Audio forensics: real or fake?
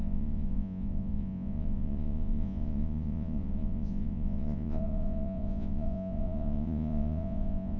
fake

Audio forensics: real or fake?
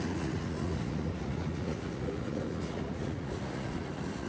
fake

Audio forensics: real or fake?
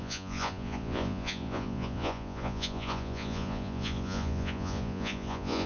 fake